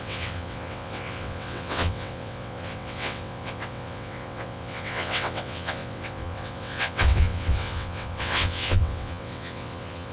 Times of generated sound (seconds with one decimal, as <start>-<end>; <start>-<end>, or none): 0.0-10.1